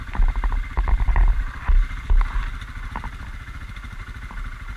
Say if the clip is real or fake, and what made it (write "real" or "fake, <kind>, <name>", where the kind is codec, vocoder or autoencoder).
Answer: real